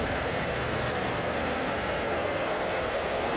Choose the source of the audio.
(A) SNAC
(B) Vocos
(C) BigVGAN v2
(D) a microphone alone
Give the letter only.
A